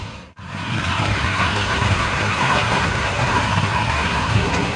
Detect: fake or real fake